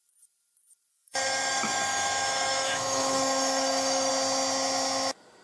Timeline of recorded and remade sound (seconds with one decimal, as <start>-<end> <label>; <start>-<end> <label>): 0.0-0.9 recorded; 0.9-4.1 remade; 4.1-5.4 recorded